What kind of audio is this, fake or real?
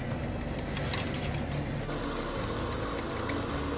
real